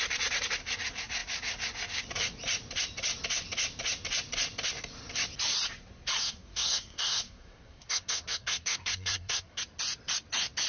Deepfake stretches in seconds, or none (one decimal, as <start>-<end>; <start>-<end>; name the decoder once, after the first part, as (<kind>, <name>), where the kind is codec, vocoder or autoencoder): 6.2-9.6 (codec, SNAC)